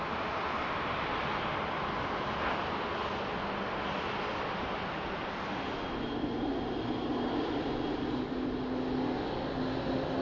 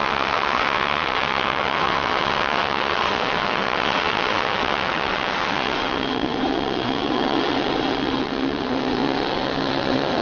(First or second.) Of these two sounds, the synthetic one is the second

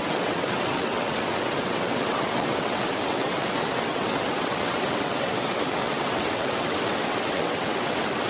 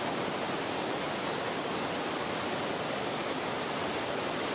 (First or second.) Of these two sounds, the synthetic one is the first